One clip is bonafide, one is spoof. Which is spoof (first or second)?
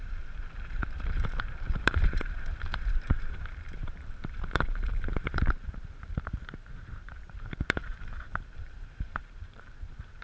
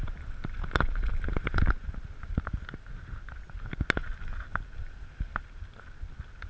first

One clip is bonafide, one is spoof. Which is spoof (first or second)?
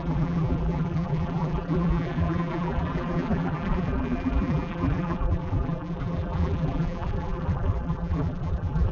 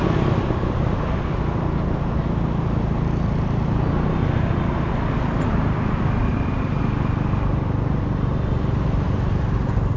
first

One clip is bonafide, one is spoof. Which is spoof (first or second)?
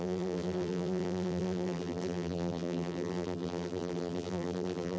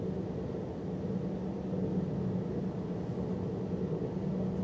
first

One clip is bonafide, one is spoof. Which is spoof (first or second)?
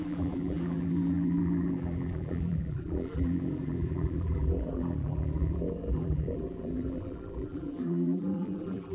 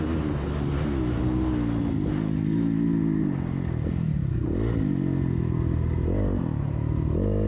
first